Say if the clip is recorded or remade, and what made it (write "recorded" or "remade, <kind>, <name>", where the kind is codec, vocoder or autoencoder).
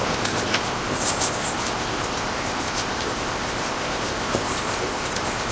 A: remade, codec, ZipCodec